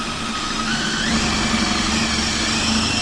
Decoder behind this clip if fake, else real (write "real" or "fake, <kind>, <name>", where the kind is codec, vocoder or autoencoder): real